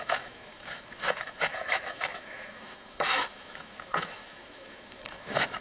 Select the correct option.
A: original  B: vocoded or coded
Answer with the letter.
B